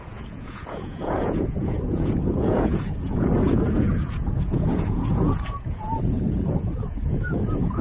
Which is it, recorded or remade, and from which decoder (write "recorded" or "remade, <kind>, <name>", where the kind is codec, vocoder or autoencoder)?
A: remade, vocoder, Vocos